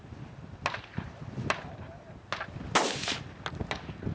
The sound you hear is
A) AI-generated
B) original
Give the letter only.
B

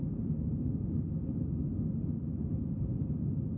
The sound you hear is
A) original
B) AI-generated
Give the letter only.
A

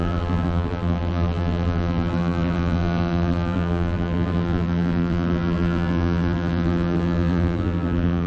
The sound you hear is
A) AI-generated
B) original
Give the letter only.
A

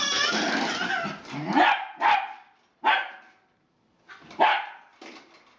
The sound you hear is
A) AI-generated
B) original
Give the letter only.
B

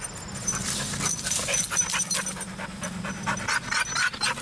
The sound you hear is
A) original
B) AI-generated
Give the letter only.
A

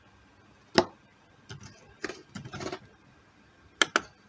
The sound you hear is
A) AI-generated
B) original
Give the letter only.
B